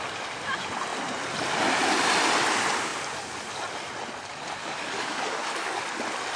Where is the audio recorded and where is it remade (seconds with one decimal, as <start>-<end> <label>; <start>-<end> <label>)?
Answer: 0.0-4.6 recorded; 4.6-5.8 remade; 5.8-6.4 recorded